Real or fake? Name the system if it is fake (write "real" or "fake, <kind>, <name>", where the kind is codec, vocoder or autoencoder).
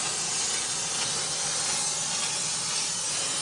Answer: real